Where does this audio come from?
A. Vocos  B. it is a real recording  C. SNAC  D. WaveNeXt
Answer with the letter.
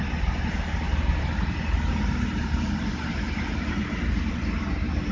B